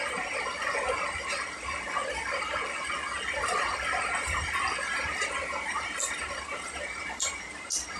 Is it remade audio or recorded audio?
recorded